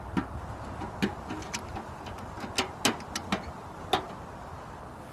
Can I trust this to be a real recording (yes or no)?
yes